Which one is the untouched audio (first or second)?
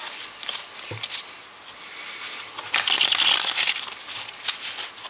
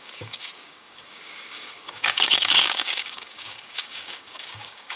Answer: first